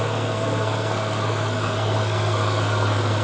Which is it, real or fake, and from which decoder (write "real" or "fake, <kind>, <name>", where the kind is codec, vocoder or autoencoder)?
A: fake, codec, SNAC